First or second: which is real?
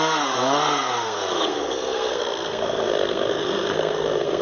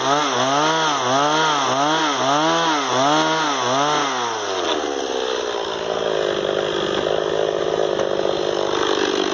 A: second